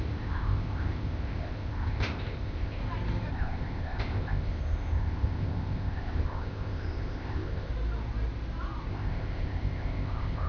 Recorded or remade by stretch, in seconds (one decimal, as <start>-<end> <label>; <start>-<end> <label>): 0.0-2.8 remade; 2.8-3.3 recorded; 3.3-7.7 remade; 7.7-8.9 recorded; 8.9-10.5 remade